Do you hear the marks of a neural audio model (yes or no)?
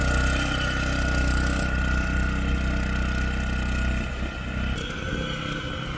no